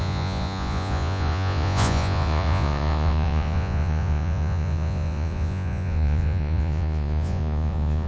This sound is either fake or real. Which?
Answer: fake